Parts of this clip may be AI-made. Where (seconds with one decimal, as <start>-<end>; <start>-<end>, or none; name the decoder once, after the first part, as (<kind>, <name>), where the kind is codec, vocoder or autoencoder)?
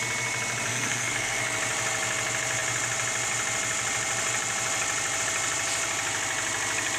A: 0.7-1.4 (codec, SNAC)